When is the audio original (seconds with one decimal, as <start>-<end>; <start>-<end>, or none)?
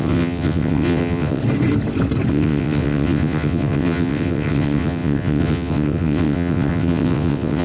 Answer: 1.4-2.3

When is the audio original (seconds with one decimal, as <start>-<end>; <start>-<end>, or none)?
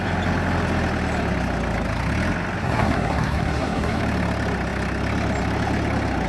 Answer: 0.0-2.6; 4.0-6.3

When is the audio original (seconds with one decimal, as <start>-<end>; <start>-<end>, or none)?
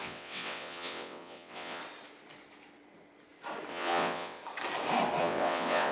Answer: 1.8-3.7; 4.4-5.2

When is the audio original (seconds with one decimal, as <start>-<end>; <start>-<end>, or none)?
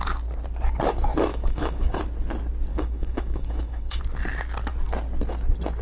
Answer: 0.0-1.3; 2.0-2.7; 4.0-5.8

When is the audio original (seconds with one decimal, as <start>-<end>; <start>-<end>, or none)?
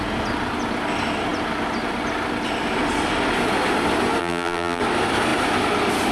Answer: 0.0-4.2; 4.8-6.1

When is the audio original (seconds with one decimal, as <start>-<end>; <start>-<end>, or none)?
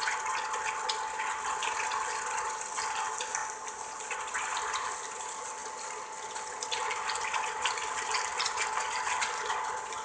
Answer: 0.0-10.0